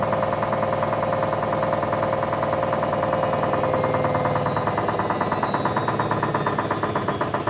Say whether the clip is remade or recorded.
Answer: recorded